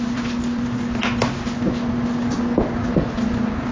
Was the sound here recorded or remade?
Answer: recorded